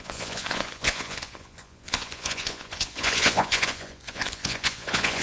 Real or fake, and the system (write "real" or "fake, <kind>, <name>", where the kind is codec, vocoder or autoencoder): fake, vocoder, Vocos